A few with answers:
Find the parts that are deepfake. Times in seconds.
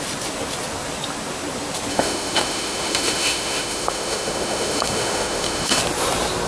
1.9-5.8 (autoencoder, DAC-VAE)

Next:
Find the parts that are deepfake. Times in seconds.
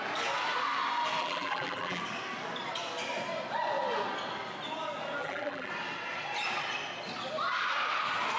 1.2-2.0 (vocoder, BigVGAN v2); 5.2-5.7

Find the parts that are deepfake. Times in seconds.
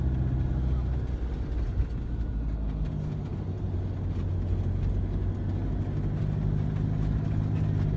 none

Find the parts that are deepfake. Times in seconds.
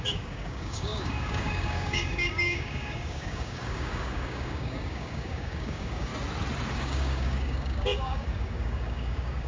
0.0-6.1 (codec, DAC); 6.7-9.5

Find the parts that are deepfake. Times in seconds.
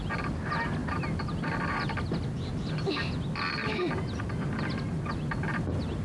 none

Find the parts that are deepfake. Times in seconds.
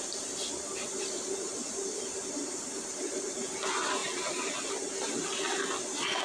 none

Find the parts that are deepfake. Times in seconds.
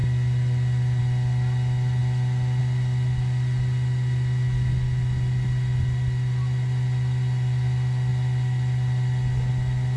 none